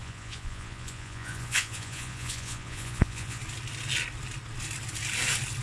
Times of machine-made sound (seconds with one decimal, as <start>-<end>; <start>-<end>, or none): 0.0-3.4